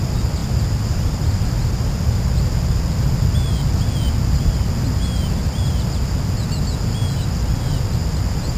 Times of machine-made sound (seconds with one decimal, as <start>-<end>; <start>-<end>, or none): 0.4-1.5